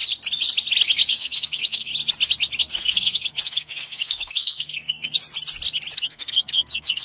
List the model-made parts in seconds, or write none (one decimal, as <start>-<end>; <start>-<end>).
1.1-1.9; 2.6-5.2; 6.0-7.0